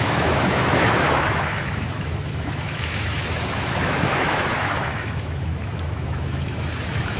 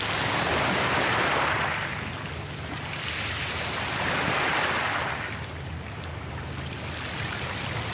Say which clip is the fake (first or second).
first